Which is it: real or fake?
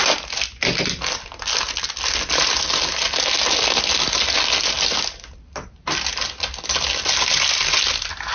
real